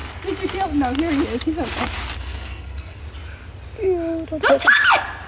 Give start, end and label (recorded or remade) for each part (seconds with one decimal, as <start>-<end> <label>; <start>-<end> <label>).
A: 0.0-2.2 recorded; 2.2-3.0 remade; 3.0-5.3 recorded